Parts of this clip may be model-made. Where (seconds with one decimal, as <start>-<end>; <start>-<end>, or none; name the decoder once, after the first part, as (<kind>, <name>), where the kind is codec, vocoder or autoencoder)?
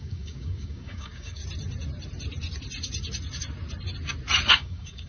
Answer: 0.0-1.4 (codec, DAC); 4.5-5.1